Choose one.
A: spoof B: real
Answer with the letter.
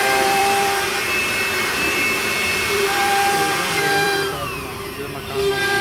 A